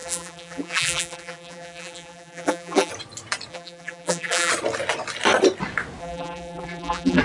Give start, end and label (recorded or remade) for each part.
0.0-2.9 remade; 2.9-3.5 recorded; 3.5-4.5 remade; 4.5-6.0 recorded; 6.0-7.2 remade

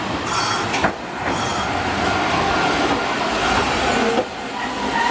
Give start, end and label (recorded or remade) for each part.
0.0-5.1 recorded

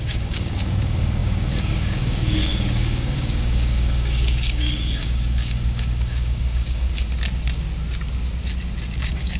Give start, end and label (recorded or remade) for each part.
0.0-6.9 remade; 6.9-9.0 recorded; 9.0-9.4 remade

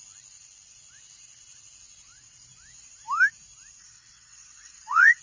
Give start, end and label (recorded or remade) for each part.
0.0-3.8 recorded; 3.8-5.2 remade

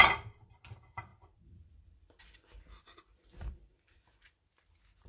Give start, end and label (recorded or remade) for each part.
0.0-1.1 recorded; 1.1-4.2 remade; 4.2-5.1 recorded